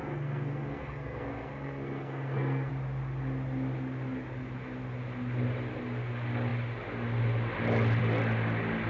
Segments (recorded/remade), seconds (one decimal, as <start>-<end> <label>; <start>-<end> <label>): 0.0-2.7 remade; 2.7-8.9 recorded